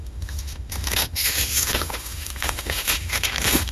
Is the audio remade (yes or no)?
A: yes